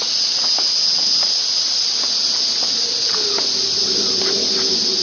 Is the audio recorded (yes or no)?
yes